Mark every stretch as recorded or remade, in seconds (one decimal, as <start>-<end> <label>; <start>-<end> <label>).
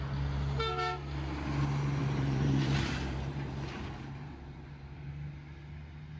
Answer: 0.0-2.0 recorded; 2.0-5.1 remade; 5.1-6.2 recorded